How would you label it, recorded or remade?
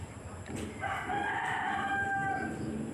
recorded